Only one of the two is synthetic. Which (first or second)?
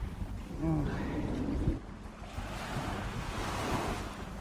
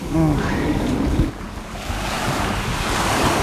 second